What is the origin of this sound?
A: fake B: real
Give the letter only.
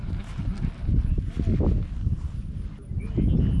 B